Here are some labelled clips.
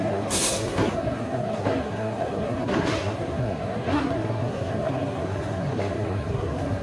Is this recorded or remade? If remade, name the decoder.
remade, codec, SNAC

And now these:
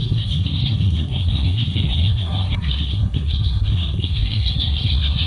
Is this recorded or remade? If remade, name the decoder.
remade, codec, SNAC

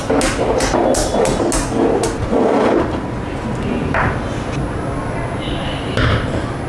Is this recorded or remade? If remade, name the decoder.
recorded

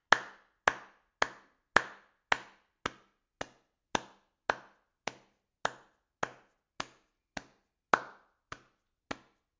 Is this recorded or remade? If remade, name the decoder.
recorded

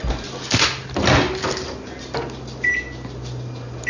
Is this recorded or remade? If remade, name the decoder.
recorded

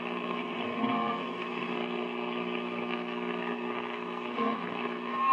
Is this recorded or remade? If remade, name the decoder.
remade, codec, SNAC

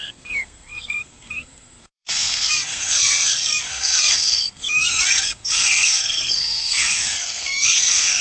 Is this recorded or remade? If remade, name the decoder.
remade, codec, SNAC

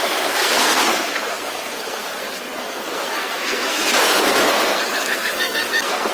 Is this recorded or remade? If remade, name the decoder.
remade, codec, SNAC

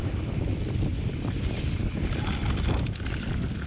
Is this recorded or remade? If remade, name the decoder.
recorded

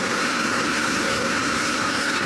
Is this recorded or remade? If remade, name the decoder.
remade, codec, SNAC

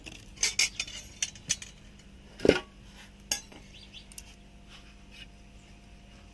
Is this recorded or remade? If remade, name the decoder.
recorded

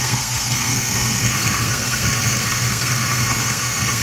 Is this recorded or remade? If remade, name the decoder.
remade, codec, SNAC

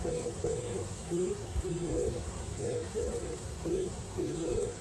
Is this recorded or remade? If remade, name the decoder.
remade, codec, SNAC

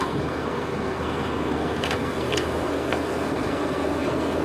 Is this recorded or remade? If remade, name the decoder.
remade, codec, SNAC